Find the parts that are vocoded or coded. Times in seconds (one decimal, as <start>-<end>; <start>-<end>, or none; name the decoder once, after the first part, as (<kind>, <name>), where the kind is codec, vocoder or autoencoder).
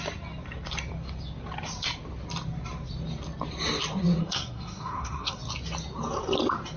4.2-5.4 (codec, SNAC)